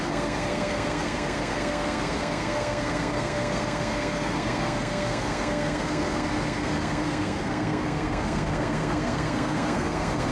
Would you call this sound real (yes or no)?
no